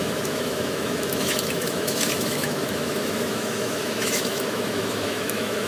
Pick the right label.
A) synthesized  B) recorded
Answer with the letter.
A